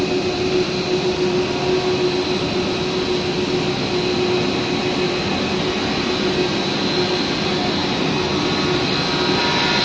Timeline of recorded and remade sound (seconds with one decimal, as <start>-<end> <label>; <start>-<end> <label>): 0.0-9.8 recorded